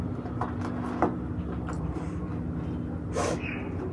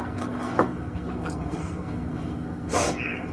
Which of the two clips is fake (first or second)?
second